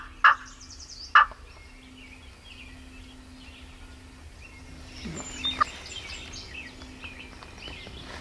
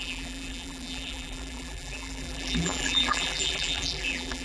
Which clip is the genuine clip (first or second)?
first